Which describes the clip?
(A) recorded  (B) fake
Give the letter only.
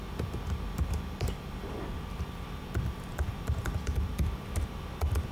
B